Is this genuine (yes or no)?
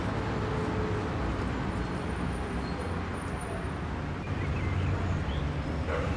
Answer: yes